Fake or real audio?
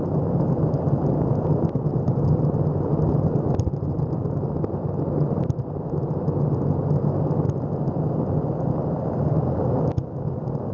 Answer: real